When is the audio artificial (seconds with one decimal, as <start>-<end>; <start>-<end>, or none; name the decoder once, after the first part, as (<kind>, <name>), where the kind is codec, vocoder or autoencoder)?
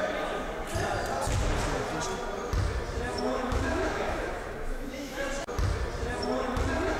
3.1-5.2 (autoencoder, DAC-VAE)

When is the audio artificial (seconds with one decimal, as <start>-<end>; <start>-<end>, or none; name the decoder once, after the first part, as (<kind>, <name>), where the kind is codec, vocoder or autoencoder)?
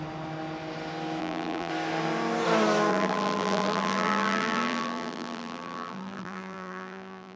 1.2-1.7 (vocoder, BigVGAN v2); 2.9-7.4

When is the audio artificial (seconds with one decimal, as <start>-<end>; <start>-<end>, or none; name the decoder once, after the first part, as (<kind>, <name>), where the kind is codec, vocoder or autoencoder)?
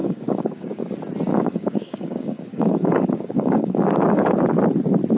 0.0-0.9 (codec, DAC); 1.3-4.4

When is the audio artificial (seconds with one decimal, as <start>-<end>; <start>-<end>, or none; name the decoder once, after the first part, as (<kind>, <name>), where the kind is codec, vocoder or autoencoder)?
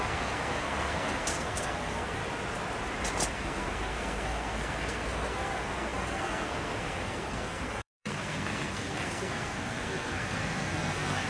0.0-2.2 (codec, SNAC); 3.3-11.3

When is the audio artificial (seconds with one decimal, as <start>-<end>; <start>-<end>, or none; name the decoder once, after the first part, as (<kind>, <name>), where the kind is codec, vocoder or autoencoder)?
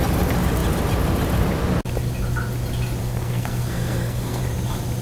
3.0-4.4 (codec, SNAC)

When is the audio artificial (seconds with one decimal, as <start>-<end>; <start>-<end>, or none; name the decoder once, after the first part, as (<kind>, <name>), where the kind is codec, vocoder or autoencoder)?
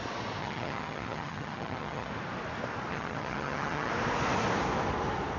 0.4-2.1 (vocoder, HiFi-GAN); 2.9-3.9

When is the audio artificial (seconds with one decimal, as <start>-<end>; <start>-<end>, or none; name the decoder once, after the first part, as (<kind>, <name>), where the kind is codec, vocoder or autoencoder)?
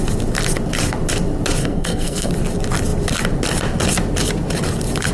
1.6-2.3 (codec, SNAC)